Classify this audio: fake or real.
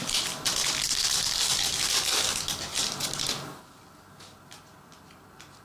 real